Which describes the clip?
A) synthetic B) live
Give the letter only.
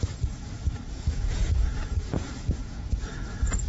A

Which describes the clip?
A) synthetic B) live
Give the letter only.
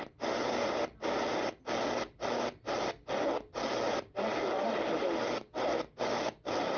B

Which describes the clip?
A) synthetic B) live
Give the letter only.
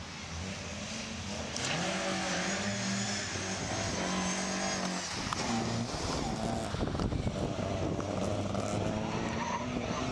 B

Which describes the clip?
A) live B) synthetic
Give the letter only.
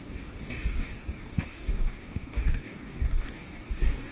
B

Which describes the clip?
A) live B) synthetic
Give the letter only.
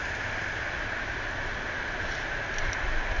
A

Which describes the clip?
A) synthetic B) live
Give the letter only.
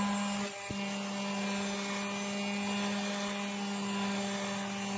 B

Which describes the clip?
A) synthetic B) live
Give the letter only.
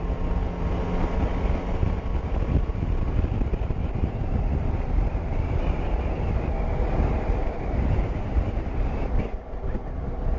B